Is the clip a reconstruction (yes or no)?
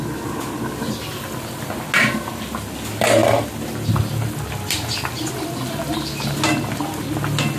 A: no